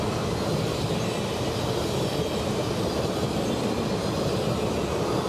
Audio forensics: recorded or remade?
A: recorded